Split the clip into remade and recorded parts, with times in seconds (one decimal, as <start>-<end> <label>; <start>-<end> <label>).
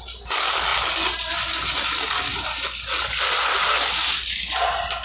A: 0.0-5.0 recorded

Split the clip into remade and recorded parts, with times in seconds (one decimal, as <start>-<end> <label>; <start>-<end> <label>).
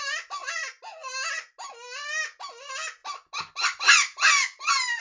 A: 0.0-5.0 recorded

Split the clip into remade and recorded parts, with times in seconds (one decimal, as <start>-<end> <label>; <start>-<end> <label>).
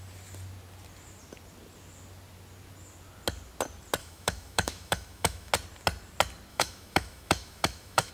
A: 0.0-4.0 recorded; 4.0-5.5 remade; 5.5-6.5 recorded; 6.5-8.1 remade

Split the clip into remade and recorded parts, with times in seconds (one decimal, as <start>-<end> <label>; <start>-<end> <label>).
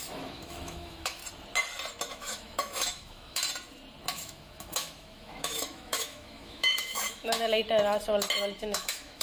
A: 0.0-1.2 remade; 1.2-2.1 recorded; 2.1-3.4 remade; 3.4-4.1 recorded; 4.1-7.6 remade; 7.6-8.6 recorded; 8.6-9.2 remade